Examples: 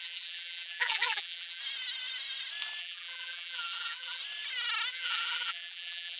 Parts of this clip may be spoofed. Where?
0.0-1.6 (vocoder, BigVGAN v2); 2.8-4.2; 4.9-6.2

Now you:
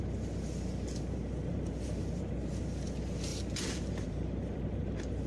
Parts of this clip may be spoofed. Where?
1.5-2.5 (vocoder, BigVGAN v2); 3.3-5.3

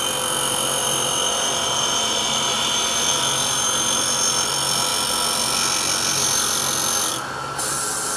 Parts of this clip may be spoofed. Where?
1.3-3.2 (vocoder, BigVGAN v2)

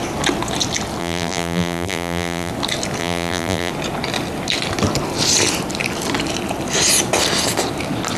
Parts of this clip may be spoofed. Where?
1.0-2.5 (vocoder, BigVGAN v2); 3.0-3.7

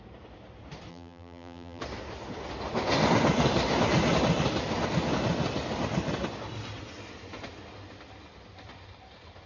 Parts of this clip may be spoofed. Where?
0.9-1.8 (vocoder, BigVGAN v2)